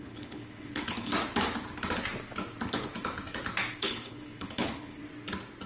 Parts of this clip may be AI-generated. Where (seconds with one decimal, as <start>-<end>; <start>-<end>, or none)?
0.0-1.1; 3.7-5.0